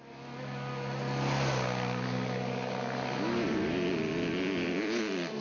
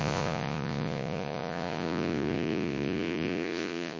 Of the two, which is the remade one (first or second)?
second